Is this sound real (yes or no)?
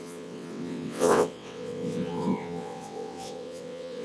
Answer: no